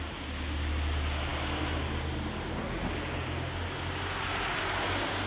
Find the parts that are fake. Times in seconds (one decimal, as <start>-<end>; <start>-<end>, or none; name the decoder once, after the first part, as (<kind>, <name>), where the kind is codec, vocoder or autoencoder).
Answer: none